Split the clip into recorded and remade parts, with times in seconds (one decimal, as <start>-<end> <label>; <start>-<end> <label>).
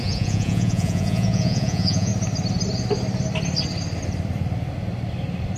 0.0-2.1 remade; 2.1-5.6 recorded